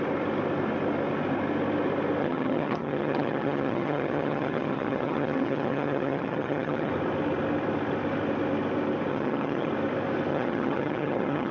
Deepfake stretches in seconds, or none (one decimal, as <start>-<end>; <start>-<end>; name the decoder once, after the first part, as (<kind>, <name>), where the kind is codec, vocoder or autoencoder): 2.2-6.9 (vocoder, HiFi-GAN); 9.1-9.7; 10.3-11.5